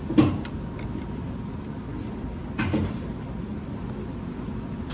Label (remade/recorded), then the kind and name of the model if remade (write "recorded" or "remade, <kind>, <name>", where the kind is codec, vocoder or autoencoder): recorded